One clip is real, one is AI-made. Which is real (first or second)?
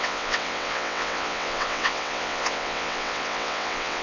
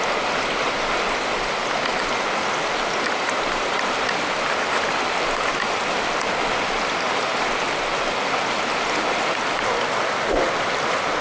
second